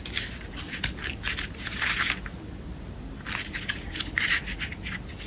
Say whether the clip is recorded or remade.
recorded